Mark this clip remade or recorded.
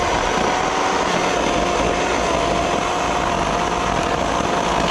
recorded